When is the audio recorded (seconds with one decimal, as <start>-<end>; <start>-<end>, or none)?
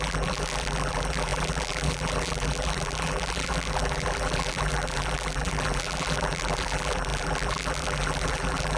none